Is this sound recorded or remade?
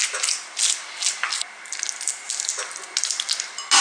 recorded